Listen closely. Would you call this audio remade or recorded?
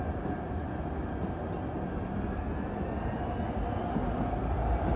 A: recorded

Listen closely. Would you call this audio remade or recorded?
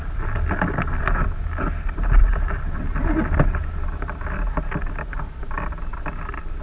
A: recorded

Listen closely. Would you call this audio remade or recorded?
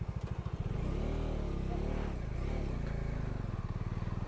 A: recorded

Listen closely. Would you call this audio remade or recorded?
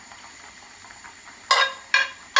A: recorded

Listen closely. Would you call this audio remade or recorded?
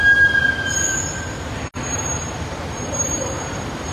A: recorded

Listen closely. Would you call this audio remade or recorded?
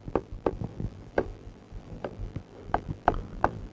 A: remade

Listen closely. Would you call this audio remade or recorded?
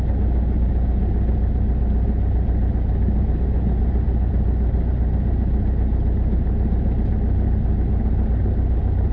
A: recorded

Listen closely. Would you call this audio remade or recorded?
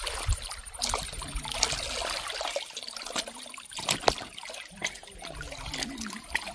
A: recorded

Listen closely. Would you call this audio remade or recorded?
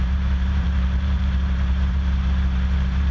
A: remade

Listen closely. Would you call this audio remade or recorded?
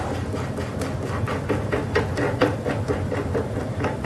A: recorded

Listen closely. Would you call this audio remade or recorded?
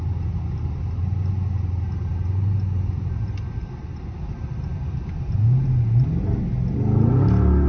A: recorded